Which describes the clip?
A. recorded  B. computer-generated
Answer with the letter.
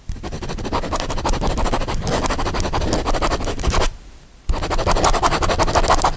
A